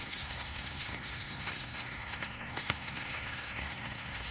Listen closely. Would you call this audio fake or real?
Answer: fake